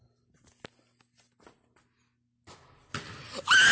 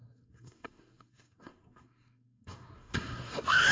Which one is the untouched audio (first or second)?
first